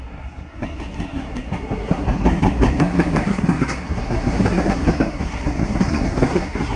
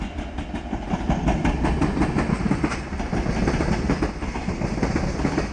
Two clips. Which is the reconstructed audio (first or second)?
first